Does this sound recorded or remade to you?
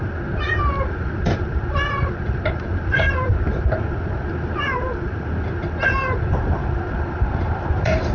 recorded